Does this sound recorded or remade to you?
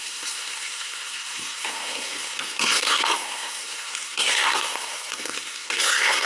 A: remade